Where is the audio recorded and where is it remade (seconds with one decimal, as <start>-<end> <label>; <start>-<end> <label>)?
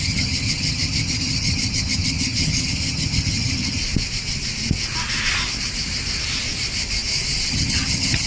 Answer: 0.0-3.8 remade; 3.8-7.5 recorded; 7.5-8.3 remade